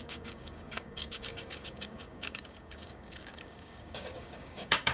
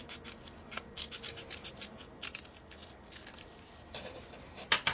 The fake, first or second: first